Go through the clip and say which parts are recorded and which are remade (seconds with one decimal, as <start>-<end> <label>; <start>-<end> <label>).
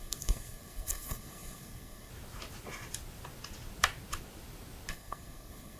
0.0-2.1 remade; 2.1-4.9 recorded; 4.9-5.8 remade